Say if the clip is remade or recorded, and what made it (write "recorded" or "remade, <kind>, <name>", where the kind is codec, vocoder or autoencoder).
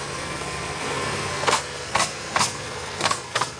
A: remade, codec, SNAC